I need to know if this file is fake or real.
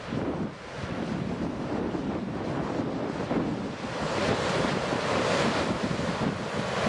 fake